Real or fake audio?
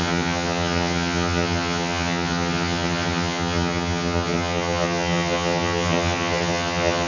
fake